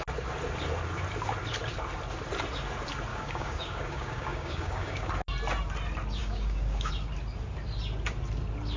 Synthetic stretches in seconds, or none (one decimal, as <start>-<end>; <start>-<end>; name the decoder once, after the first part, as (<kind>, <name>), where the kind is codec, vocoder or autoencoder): 3.1-5.1 (codec, DAC); 6.2-6.9